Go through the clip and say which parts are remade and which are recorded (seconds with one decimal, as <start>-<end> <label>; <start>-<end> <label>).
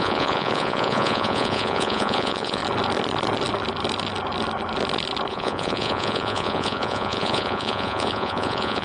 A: 0.0-2.6 remade; 2.6-5.3 recorded; 5.3-8.8 remade